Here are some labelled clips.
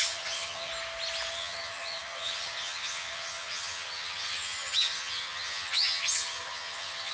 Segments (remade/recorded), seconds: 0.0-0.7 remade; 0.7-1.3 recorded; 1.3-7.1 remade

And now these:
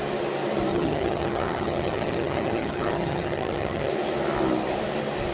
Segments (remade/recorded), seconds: 0.0-0.7 recorded; 0.7-3.9 remade; 3.9-5.3 recorded

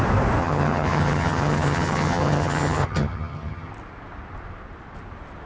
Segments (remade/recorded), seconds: 0.0-0.4 recorded; 0.4-3.7 remade; 3.7-5.5 recorded